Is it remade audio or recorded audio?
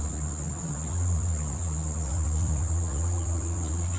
remade